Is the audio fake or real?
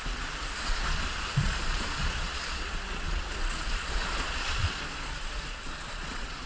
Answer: fake